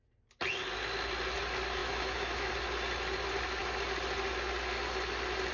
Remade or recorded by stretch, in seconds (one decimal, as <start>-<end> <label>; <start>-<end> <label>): 0.0-1.8 recorded; 1.8-2.5 remade; 2.5-5.5 recorded